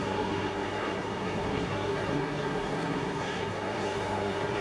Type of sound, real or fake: fake